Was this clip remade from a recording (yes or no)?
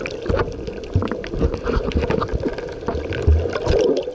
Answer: no